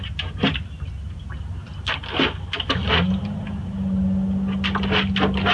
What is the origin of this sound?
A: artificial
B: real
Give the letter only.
B